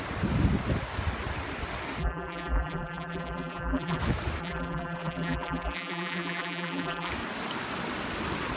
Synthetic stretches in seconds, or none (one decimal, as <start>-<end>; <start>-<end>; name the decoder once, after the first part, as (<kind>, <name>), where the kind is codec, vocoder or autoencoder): 2.0-4.0 (vocoder, BigVGAN v2); 4.4-7.1

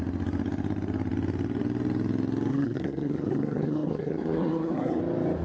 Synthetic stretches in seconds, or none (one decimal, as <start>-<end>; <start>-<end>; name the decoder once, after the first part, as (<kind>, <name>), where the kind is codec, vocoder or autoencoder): 2.5-5.0 (codec, SNAC)

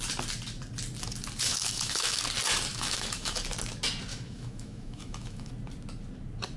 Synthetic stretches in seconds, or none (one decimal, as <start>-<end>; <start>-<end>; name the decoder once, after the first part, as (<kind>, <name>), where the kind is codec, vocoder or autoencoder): 1.5-2.2 (autoencoder, DAC-VAE); 2.7-3.4; 4.1-5.5